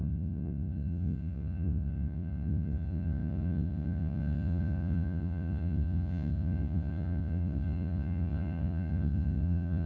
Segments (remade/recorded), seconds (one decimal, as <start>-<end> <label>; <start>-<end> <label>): 0.0-9.9 remade